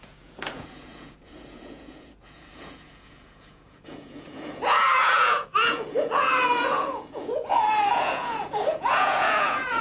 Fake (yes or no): yes